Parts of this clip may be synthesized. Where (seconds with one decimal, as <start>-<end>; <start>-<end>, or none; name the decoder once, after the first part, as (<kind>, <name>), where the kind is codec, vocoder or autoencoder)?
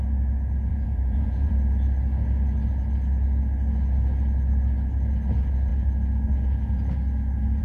0.7-1.5 (vocoder, Vocos)